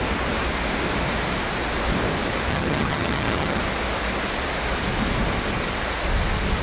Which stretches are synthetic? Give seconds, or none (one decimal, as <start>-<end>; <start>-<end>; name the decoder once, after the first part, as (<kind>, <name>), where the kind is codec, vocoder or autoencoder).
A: 2.5-3.6 (vocoder, HiFi-GAN)